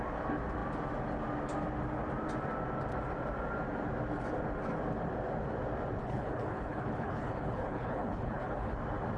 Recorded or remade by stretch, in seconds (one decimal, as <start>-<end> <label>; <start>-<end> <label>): 0.0-6.0 recorded; 6.0-8.7 remade; 8.7-9.2 recorded